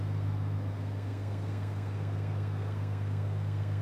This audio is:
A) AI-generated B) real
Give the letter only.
A